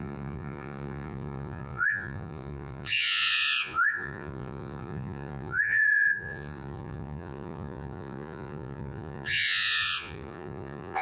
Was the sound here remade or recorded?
remade